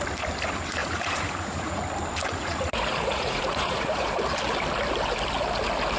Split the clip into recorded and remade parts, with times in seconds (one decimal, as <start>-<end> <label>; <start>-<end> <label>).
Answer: 0.0-0.8 recorded; 0.8-1.8 remade; 1.8-2.2 recorded; 2.2-4.2 remade; 4.2-6.0 recorded